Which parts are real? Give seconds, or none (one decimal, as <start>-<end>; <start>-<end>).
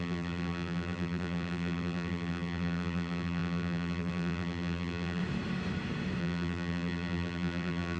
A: 5.2-6.2